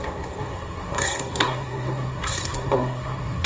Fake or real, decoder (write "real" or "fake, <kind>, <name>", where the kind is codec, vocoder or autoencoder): fake, codec, SNAC